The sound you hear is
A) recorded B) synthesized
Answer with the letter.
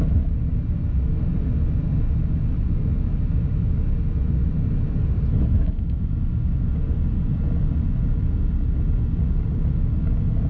A